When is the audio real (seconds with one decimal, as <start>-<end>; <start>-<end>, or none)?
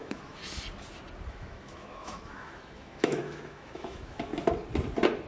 0.4-1.3; 4.3-5.3